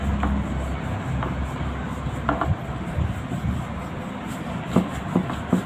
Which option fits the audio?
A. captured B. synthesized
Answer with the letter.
A